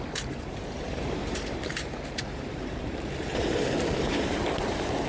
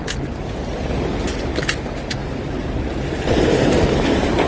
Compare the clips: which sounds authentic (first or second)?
second